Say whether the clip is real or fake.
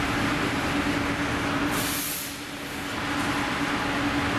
real